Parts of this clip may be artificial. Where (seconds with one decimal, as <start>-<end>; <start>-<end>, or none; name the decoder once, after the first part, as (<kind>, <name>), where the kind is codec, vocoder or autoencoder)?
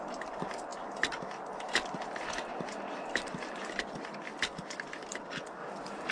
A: 0.0-0.7 (vocoder, BigVGAN v2); 4.4-6.1